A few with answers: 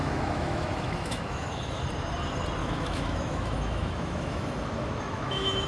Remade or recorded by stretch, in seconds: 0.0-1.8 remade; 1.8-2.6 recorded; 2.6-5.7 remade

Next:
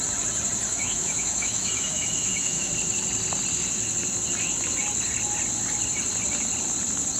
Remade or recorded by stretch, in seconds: 0.0-0.7 recorded; 0.7-2.7 remade; 2.7-7.2 recorded

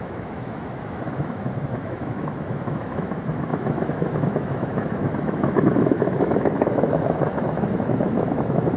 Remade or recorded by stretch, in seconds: 0.0-8.8 remade

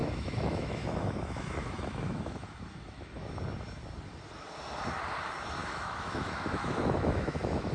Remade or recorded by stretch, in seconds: 0.0-3.4 remade; 3.4-5.6 recorded; 5.6-7.7 remade

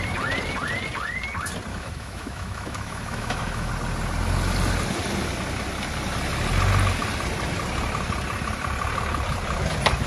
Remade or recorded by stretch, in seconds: 0.0-1.7 recorded; 1.7-3.7 remade; 3.7-10.1 recorded

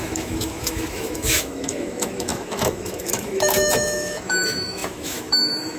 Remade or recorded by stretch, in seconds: 0.0-5.8 remade

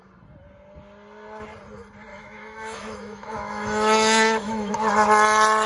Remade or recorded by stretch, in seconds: 0.0-2.1 recorded; 2.1-4.7 remade; 4.7-5.7 recorded